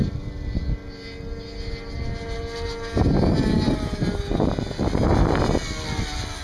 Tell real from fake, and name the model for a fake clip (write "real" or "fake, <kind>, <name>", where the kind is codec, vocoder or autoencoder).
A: real